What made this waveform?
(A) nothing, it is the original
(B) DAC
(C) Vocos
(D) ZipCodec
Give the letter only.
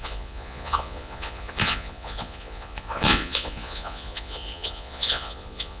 C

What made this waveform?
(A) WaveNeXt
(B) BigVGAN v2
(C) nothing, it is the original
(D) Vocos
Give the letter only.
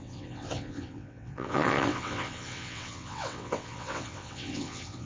A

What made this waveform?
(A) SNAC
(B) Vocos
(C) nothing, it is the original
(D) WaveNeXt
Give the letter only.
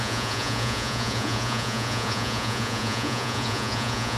B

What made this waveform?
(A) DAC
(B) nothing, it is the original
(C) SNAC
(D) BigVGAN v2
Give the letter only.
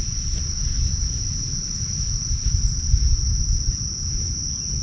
B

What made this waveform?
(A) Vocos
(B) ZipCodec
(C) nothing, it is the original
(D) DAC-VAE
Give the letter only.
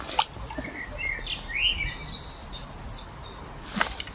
C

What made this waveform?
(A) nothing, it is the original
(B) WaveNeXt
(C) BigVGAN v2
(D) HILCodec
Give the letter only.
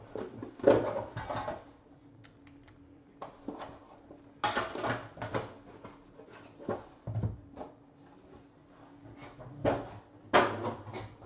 A